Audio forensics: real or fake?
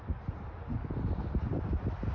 real